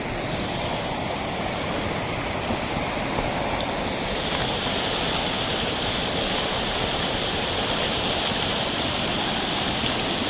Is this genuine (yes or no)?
yes